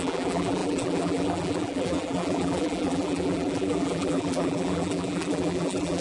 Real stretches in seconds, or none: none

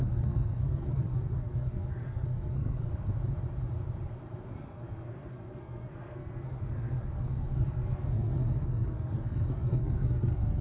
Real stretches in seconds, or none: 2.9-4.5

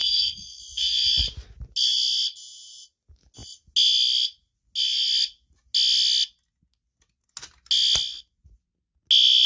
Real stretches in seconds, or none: 0.6-9.5